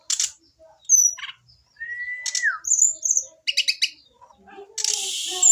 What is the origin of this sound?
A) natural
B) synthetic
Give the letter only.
A